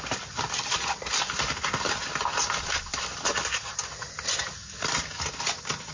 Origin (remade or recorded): recorded